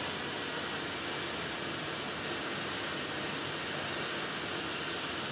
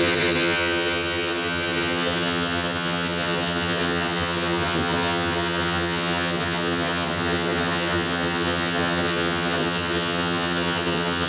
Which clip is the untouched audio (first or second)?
first